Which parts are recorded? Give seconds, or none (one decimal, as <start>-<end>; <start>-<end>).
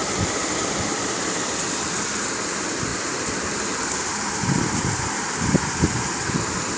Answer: 2.0-2.9; 6.1-6.8